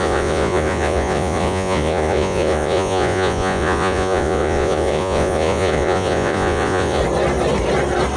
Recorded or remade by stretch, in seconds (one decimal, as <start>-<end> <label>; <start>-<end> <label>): 0.0-7.0 remade; 7.0-8.2 recorded